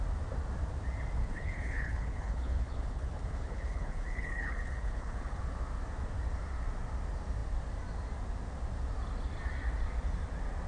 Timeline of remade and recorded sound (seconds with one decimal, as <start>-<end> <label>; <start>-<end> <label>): 0.0-1.2 recorded; 1.2-5.4 remade; 5.4-10.7 recorded